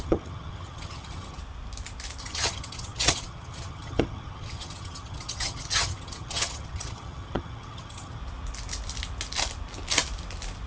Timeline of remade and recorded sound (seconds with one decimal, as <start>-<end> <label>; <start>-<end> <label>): 0.0-1.4 remade; 1.4-2.2 recorded; 2.2-8.2 remade; 8.2-10.7 recorded